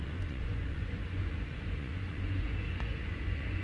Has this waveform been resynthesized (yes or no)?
yes